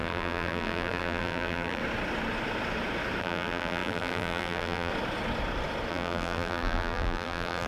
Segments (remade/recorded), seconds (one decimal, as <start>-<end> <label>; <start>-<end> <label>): 0.0-1.8 remade; 1.8-3.2 recorded; 3.2-4.9 remade; 4.9-5.9 recorded; 5.9-7.7 remade